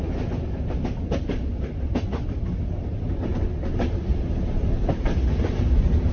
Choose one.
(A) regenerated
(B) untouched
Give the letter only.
B